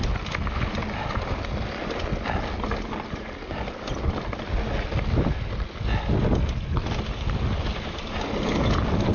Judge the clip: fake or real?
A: real